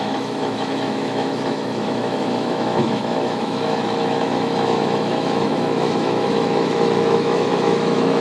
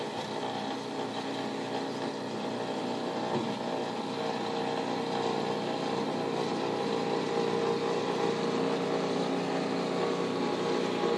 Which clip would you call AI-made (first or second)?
first